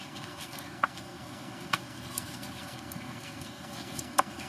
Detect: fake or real fake